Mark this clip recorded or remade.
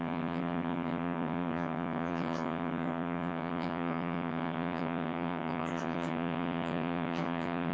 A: remade